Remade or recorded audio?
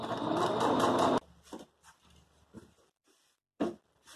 remade